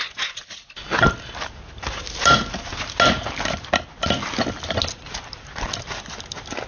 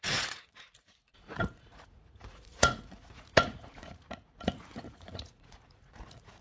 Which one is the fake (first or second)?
second